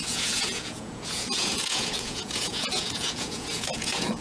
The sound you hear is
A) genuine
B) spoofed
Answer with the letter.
B